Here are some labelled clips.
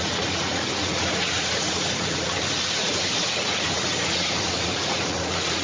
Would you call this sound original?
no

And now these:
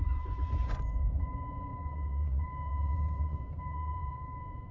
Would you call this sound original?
no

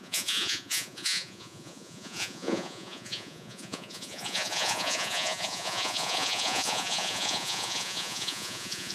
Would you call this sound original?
no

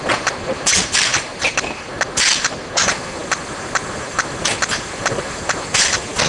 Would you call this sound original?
yes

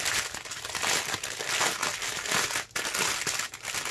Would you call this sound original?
yes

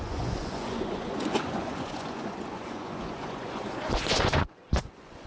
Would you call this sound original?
no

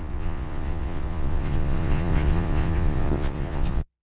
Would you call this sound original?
no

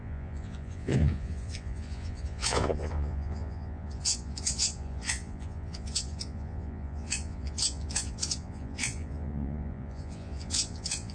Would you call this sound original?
no